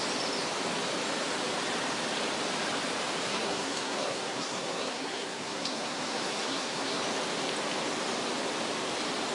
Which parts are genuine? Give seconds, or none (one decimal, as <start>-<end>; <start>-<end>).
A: 0.0-3.2; 7.0-9.3